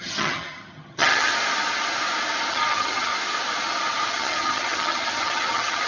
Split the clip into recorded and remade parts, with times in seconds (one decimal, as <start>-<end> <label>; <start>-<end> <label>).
0.0-1.3 remade; 1.3-2.5 recorded; 2.5-3.1 remade; 3.1-4.1 recorded; 4.1-5.9 remade